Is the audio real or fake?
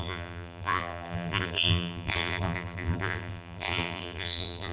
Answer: fake